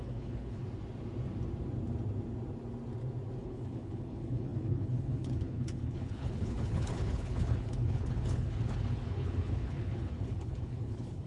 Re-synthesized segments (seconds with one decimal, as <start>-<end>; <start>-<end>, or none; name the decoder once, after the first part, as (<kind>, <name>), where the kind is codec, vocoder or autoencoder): 0.0-0.6 (codec, HILCodec); 3.4-11.3